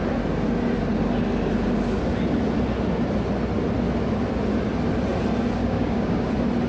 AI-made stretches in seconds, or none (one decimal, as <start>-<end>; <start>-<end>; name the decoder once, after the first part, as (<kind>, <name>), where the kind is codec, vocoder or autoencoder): 5.6-6.3 (codec, DAC)